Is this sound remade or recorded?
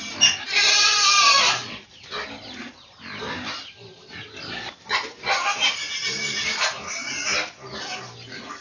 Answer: recorded